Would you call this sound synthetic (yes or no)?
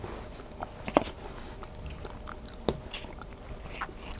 no